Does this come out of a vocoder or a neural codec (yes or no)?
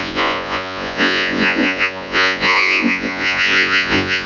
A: yes